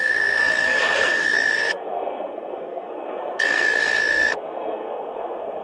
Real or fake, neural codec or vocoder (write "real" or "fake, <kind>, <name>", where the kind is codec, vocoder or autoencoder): fake, codec, SNAC